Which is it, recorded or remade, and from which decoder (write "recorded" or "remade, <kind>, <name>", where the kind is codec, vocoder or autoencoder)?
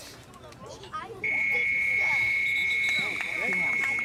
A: recorded